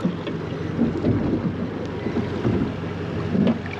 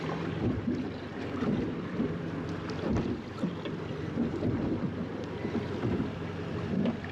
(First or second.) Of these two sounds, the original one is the first